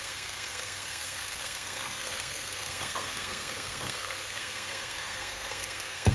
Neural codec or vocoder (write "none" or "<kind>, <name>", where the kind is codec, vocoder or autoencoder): codec, SNAC